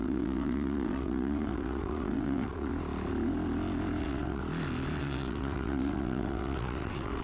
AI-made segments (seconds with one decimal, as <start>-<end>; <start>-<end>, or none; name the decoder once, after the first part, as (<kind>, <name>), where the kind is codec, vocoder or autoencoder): 0.0-2.7 (vocoder, WaveNeXt); 4.0-4.4; 5.0-7.2

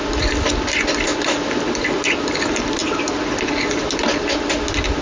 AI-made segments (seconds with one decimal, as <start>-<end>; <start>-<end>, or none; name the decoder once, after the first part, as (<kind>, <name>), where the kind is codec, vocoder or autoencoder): none